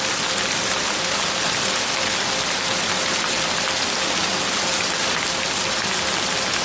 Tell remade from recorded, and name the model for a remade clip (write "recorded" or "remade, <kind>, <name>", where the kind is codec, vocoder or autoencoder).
recorded